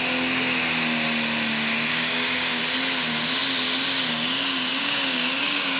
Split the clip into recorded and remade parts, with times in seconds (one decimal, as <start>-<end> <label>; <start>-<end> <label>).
0.0-1.9 recorded; 1.9-2.6 remade; 2.6-4.7 recorded; 4.7-5.8 remade